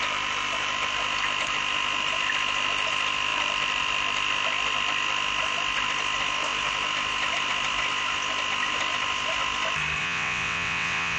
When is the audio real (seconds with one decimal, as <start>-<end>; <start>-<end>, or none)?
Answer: 0.0-10.0